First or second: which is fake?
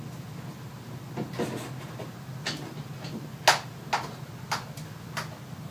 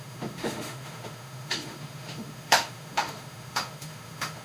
second